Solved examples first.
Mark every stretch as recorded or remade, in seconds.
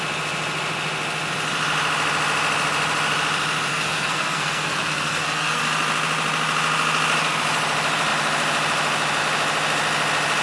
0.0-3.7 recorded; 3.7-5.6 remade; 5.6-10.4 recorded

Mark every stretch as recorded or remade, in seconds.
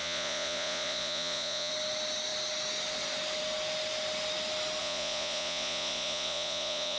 0.0-1.7 remade; 1.7-4.8 recorded; 4.8-7.0 remade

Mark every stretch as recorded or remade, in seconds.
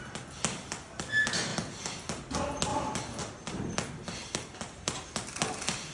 0.0-2.7 recorded; 2.7-3.2 remade; 3.2-4.2 recorded; 4.2-5.0 remade; 5.0-5.9 recorded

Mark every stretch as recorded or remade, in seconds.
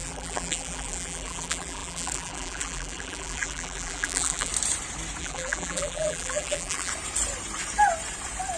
0.0-4.5 remade; 4.5-5.2 recorded; 5.2-6.9 remade; 6.9-8.6 recorded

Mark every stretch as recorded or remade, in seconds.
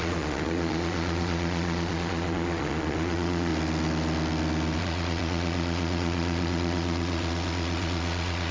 0.0-3.5 remade; 3.5-4.8 recorded; 4.8-8.5 remade